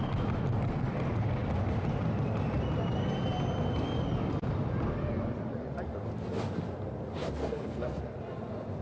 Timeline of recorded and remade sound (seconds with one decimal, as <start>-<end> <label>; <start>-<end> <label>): 0.0-7.4 recorded; 7.4-8.0 remade; 8.0-8.8 recorded